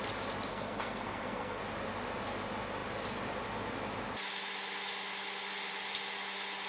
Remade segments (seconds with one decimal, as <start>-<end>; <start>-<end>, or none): 0.5-1.6